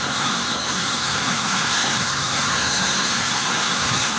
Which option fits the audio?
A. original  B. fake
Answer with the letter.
B